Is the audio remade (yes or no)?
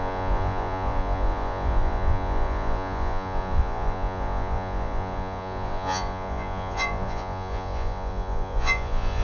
yes